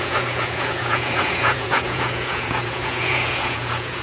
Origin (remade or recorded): remade